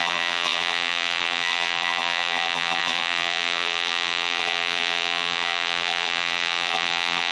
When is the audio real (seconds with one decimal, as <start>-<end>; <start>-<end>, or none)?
none